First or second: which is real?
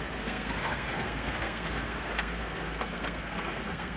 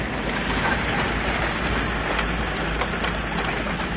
second